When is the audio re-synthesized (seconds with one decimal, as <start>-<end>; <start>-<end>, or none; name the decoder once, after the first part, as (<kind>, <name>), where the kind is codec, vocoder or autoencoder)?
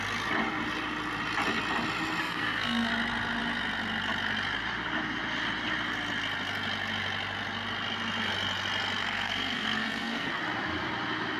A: 2.2-2.9 (codec, SNAC); 9.0-10.3